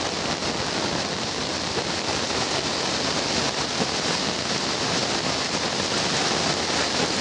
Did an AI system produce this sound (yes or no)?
no